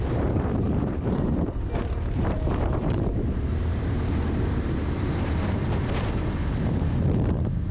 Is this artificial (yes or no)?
yes